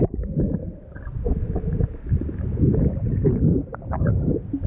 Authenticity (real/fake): real